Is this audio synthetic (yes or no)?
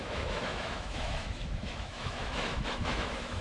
yes